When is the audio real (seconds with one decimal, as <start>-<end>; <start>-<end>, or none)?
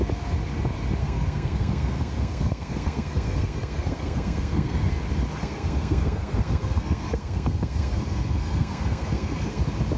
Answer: 0.0-1.0; 4.9-5.4; 9.6-10.0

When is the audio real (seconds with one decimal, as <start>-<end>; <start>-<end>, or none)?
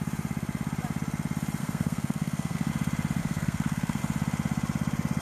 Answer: 0.0-1.6; 2.7-3.2; 4.0-5.2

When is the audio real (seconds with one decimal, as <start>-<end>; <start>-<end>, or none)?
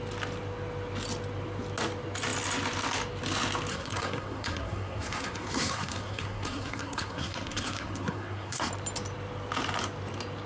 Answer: 0.0-3.7; 8.7-10.5